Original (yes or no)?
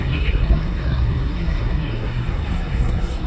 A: no